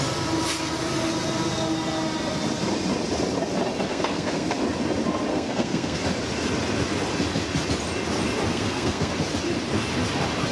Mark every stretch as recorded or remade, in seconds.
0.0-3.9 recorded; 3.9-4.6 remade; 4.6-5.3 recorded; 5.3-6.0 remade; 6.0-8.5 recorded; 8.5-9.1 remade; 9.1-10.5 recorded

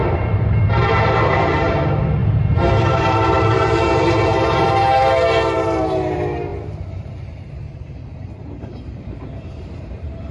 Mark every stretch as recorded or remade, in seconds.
0.0-10.3 remade

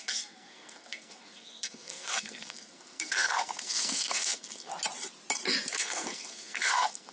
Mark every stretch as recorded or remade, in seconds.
0.0-4.7 remade; 4.7-5.7 recorded; 5.7-7.1 remade